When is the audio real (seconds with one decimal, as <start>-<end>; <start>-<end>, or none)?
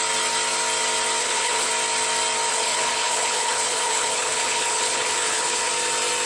0.0-1.2; 1.7-2.5; 5.7-6.3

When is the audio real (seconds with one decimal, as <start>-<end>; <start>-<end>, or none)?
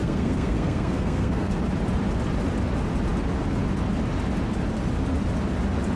1.5-6.0